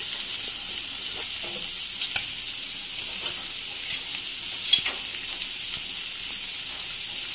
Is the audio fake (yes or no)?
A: no